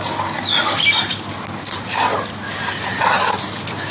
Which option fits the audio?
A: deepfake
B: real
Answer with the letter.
B